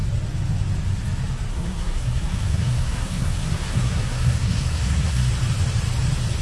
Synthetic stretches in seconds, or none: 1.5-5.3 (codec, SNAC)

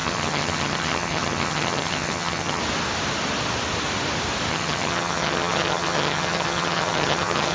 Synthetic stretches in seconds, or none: 0.0-2.6 (vocoder, HiFi-GAN); 4.5-7.5

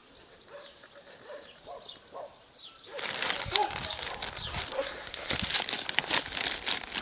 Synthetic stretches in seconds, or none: 4.7-5.3 (codec, SNAC)

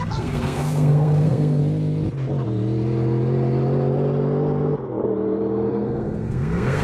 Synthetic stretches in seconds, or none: 0.0-1.6 (codec, SNAC); 5.7-6.8